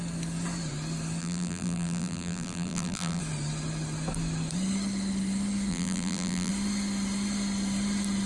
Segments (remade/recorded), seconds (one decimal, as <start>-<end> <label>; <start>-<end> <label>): 0.0-1.2 recorded; 1.2-3.2 remade; 3.2-5.7 recorded; 5.7-6.5 remade; 6.5-8.3 recorded